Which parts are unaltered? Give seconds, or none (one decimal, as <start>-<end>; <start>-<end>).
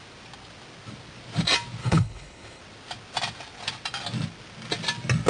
0.0-1.8; 2.6-5.3